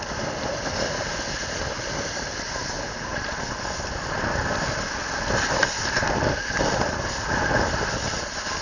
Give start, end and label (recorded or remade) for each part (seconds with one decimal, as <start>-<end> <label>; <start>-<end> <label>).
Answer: 0.0-8.6 recorded